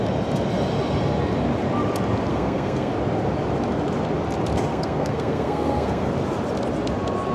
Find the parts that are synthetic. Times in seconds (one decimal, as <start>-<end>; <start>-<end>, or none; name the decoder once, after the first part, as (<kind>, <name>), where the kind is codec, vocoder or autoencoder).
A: 2.3-2.9 (codec, SNAC); 4.7-6.1